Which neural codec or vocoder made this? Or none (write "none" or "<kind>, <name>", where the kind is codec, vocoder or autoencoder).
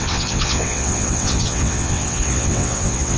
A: vocoder, WaveNeXt